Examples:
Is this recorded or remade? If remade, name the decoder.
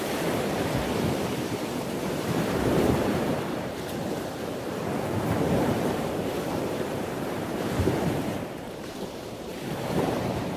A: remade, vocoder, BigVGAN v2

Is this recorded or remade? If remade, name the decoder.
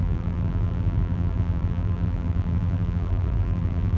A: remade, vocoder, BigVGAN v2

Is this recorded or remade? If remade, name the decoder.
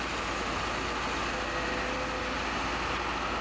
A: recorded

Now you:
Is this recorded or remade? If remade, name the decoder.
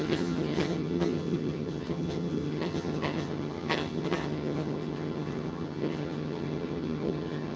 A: remade, vocoder, HiFi-GAN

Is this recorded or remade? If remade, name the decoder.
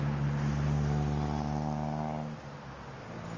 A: recorded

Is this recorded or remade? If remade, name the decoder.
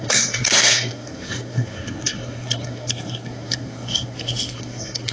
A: remade, codec, SNAC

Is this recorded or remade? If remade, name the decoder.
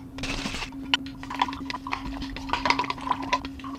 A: recorded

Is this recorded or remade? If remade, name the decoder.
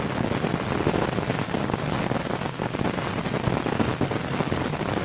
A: recorded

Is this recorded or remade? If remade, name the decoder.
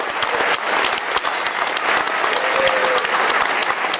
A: recorded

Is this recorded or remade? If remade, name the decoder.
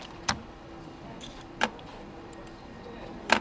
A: remade, vocoder, BigVGAN v2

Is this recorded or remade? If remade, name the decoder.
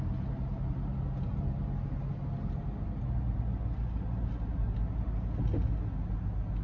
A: recorded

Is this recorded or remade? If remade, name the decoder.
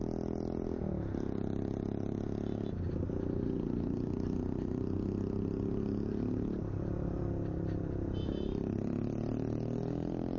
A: recorded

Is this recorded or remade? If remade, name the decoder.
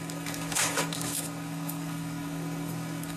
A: remade, codec, SNAC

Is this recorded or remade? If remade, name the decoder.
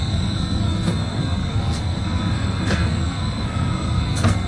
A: remade, codec, SNAC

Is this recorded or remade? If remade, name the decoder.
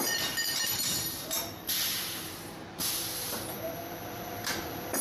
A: remade, vocoder, BigVGAN v2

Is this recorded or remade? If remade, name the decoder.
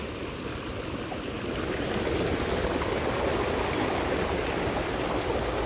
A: recorded